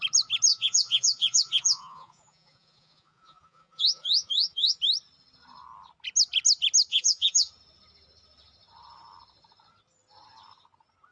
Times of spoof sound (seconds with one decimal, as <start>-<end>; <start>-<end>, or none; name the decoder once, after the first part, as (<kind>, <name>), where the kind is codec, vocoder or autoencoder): 0.5-4.8 (vocoder, Vocos); 6.9-7.5